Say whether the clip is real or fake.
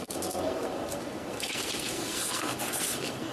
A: fake